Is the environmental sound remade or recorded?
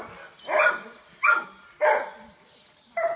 recorded